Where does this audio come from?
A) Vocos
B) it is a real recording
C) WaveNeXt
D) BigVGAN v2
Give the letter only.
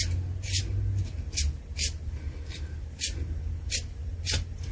B